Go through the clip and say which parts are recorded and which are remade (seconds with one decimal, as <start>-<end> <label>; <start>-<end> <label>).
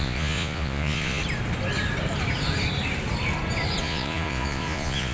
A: 0.0-1.2 remade; 1.2-3.8 recorded; 3.8-5.1 remade